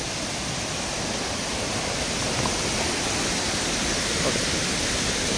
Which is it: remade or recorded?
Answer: recorded